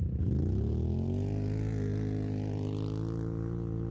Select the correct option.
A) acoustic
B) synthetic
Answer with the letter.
A